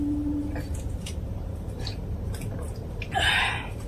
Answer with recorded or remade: remade